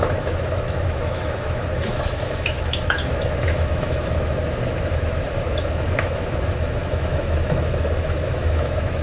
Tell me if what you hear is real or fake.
fake